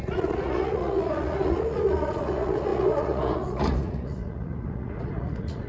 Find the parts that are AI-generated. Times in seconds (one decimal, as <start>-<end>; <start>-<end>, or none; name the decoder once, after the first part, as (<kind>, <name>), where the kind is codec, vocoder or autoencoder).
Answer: 0.0-5.7 (vocoder, Vocos)